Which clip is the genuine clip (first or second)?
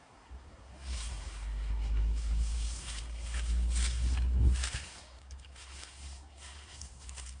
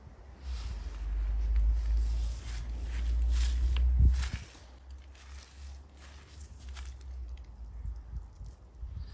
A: second